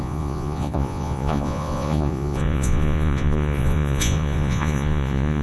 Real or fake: fake